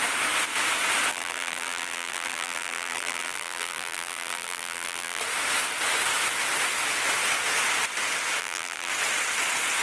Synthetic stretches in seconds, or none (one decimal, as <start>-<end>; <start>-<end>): 1.1-5.2; 8.4-8.9